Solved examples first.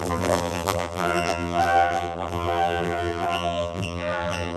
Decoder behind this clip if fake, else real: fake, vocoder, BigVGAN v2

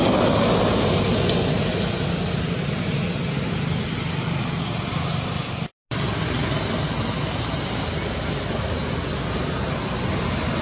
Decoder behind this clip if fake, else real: real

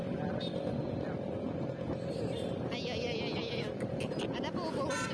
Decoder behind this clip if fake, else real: real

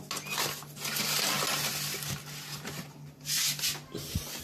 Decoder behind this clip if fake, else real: real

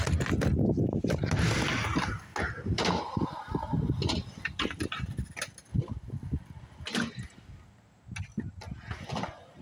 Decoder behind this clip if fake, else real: real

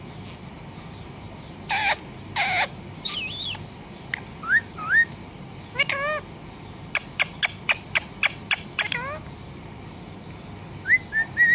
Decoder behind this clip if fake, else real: real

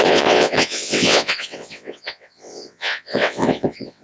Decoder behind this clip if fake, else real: fake, vocoder, WaveNeXt